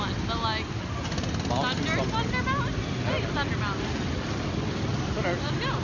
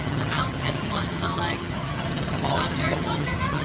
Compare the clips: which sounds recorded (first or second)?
first